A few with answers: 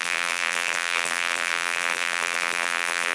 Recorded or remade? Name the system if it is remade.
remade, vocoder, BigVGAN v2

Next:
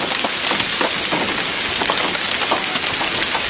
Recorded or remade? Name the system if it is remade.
recorded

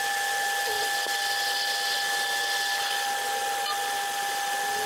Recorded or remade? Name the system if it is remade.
recorded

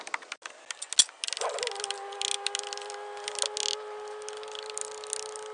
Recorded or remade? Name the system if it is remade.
recorded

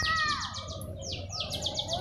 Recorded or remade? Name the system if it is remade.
recorded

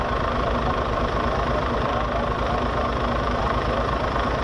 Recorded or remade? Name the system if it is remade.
remade, vocoder, BigVGAN v2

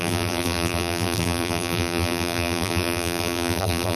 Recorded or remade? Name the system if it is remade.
remade, vocoder, BigVGAN v2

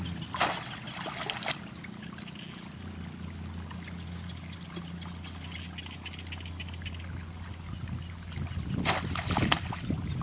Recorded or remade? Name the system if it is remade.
recorded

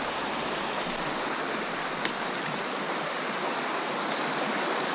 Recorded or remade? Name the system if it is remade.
recorded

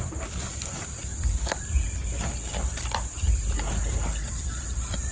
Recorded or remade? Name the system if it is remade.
remade, vocoder, BigVGAN v2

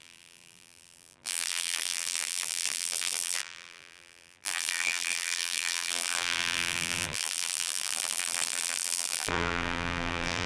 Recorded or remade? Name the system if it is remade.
remade, vocoder, BigVGAN v2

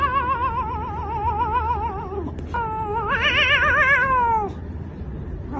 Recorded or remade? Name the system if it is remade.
recorded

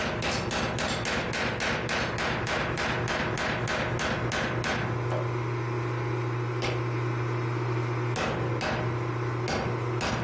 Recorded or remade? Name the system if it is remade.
recorded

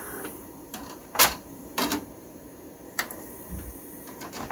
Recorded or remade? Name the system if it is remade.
remade, vocoder, BigVGAN v2